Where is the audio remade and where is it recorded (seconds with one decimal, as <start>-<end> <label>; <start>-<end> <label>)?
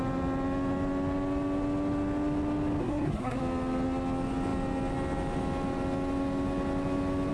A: 0.0-2.8 recorded; 2.8-3.4 remade; 3.4-7.3 recorded